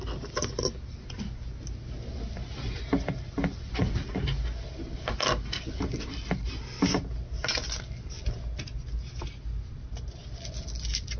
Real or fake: real